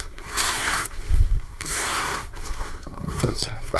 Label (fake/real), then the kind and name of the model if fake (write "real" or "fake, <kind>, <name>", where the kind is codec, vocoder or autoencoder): fake, codec, SNAC